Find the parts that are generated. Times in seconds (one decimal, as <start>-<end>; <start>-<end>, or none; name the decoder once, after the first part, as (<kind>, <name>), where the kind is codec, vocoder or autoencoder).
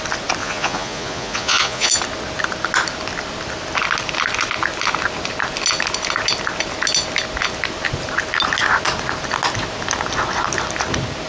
0.4-2.0 (vocoder, Vocos)